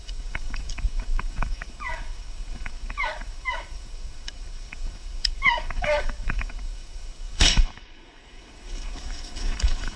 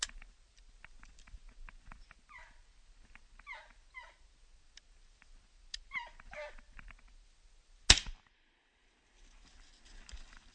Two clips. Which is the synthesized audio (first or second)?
first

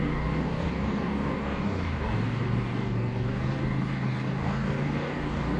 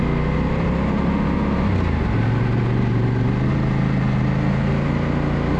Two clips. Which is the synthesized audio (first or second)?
first